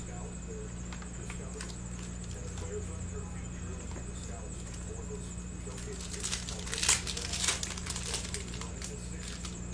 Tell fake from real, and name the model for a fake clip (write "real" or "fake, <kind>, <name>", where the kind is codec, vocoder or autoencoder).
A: real